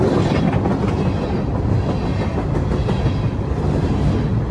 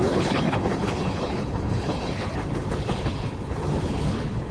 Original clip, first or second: first